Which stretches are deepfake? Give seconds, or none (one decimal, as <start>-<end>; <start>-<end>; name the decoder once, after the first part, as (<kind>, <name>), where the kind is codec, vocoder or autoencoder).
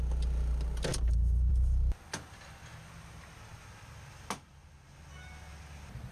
none